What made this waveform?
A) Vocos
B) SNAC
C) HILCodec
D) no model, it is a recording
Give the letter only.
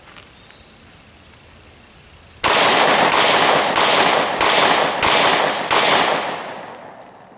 D